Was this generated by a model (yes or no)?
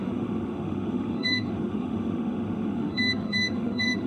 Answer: yes